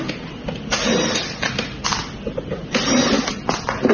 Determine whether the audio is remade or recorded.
recorded